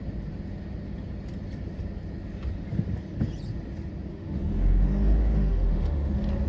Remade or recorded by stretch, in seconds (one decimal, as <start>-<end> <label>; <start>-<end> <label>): 0.0-4.1 recorded; 4.1-6.1 remade; 6.1-6.5 recorded